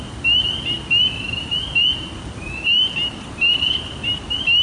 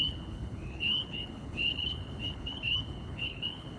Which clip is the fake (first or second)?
second